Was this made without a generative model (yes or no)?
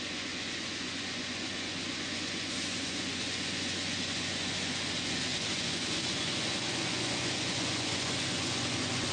no